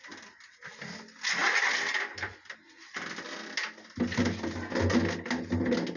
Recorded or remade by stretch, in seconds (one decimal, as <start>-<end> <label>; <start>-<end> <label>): 0.0-6.0 recorded